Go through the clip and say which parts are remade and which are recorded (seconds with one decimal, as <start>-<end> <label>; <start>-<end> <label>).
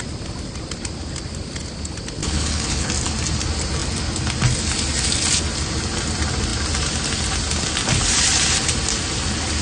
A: 0.0-2.2 recorded; 2.2-2.9 remade; 2.9-9.6 recorded